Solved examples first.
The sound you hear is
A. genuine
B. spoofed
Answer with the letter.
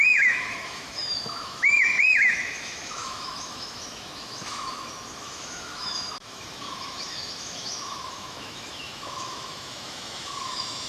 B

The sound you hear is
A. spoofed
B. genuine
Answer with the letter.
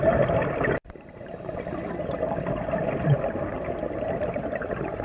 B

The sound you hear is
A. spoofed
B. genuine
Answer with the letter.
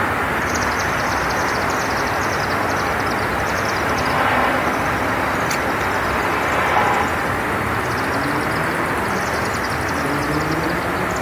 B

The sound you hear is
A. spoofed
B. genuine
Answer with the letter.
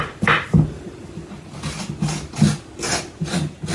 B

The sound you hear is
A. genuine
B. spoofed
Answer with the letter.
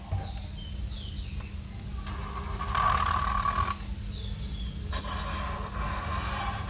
A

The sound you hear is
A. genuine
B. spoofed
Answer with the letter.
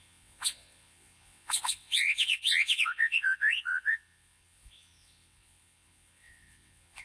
B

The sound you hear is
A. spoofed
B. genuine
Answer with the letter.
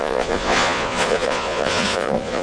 A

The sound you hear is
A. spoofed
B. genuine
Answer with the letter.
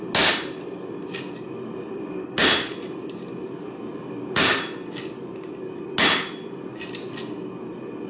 B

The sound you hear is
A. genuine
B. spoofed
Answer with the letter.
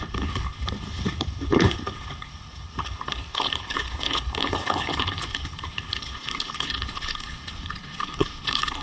B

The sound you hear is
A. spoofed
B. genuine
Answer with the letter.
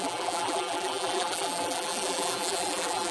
A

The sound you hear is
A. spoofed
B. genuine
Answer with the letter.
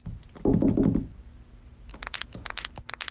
B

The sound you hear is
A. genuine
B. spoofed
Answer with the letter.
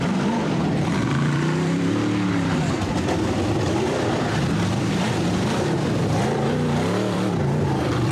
B